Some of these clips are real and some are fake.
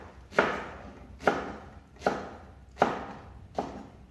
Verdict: real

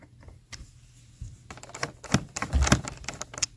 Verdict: real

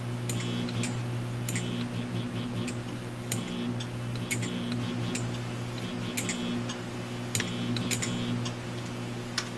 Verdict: real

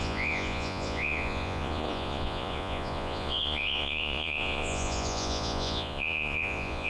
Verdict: fake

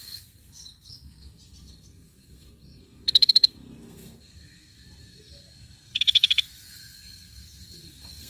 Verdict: fake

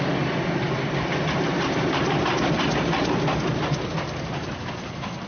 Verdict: real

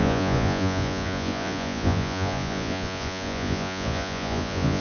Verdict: fake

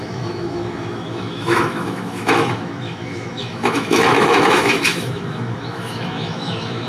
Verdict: fake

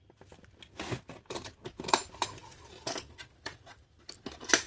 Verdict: real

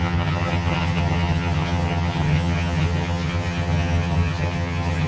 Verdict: fake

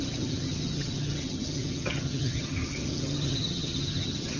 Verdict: fake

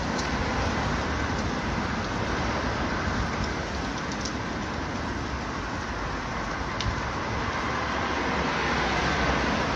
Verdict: real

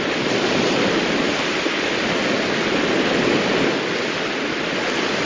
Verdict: real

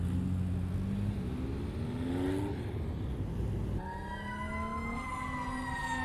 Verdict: real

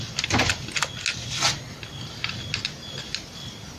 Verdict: real